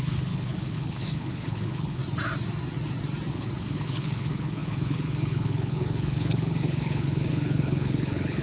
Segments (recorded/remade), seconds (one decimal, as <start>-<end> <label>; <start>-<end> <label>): 0.0-2.0 remade; 2.0-3.3 recorded; 3.3-8.4 remade